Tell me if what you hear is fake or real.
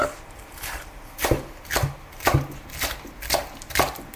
fake